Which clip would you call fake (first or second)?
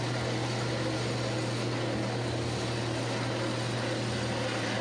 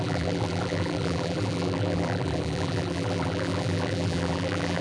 second